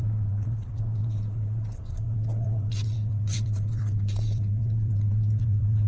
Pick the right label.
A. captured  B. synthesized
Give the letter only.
B